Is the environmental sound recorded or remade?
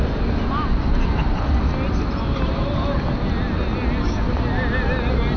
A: recorded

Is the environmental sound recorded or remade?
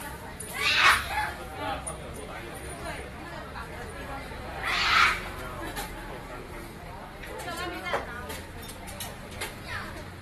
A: recorded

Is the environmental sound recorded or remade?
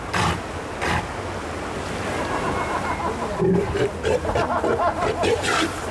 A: recorded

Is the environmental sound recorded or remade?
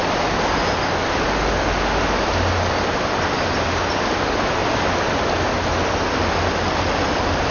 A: recorded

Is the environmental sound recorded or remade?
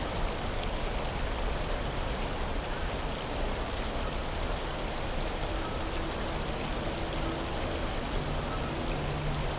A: recorded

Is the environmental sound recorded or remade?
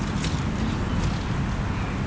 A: recorded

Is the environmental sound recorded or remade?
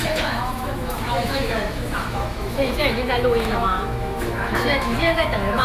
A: remade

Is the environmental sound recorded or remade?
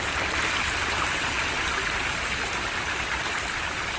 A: recorded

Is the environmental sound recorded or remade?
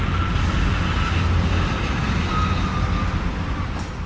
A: recorded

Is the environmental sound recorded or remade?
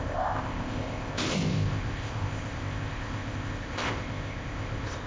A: remade